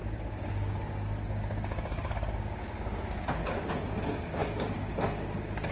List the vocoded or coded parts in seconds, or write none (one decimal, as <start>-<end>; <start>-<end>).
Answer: 0.0-5.7